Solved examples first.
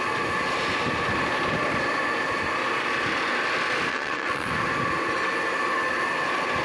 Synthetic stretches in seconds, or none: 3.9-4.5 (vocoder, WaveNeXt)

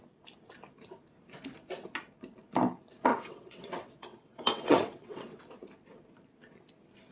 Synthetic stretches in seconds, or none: 3.1-5.4 (vocoder, WaveNeXt)

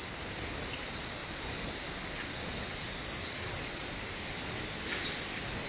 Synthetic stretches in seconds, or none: 3.2-3.8 (vocoder, WaveNeXt)

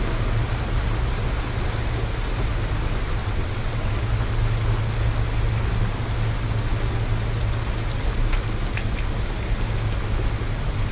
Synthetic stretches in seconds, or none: 3.2-3.9 (vocoder, WaveNeXt)

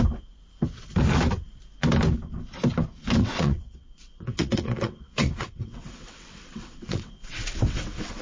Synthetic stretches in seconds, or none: 3.2-8.2 (vocoder, WaveNeXt)

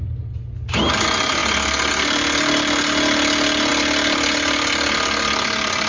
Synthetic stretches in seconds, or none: none